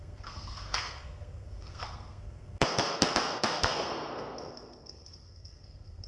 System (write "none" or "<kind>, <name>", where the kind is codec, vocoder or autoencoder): codec, SNAC